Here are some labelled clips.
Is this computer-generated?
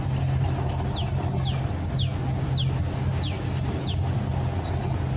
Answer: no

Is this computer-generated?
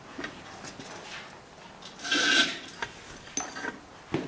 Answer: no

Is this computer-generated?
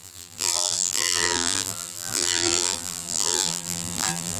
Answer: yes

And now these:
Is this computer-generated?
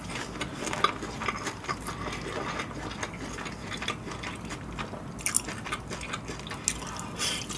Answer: no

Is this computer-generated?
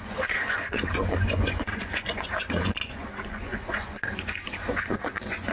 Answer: yes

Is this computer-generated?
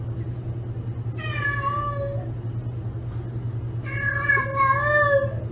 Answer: no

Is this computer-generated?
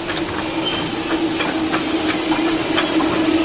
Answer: no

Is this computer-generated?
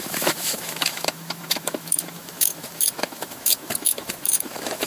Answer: yes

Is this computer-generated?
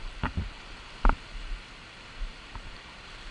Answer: no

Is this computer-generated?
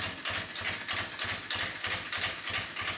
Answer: no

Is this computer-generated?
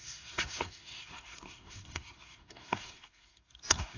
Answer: yes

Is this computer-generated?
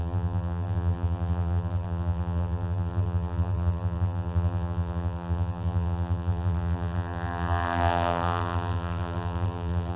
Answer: yes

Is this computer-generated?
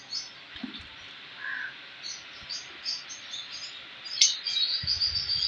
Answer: no